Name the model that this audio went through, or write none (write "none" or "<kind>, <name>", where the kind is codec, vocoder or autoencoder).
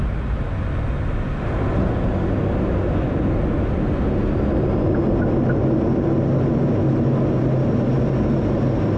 none